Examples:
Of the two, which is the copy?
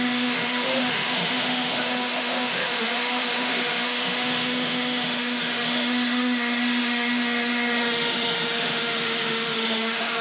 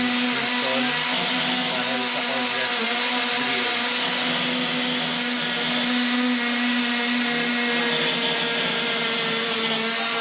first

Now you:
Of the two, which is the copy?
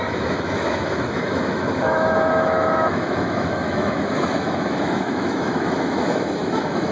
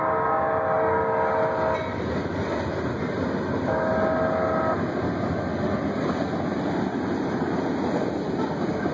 first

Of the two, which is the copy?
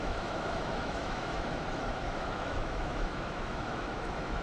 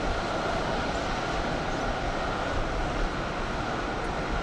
first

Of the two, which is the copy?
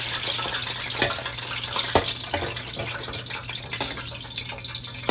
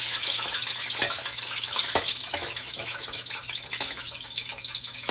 second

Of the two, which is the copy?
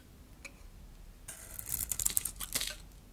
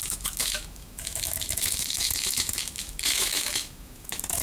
second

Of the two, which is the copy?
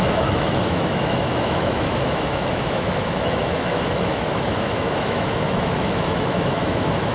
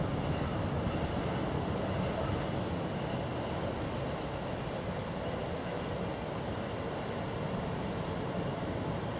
first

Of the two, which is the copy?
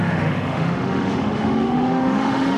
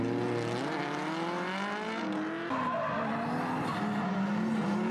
first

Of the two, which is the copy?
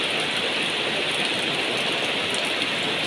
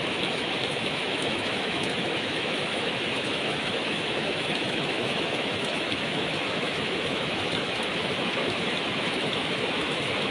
second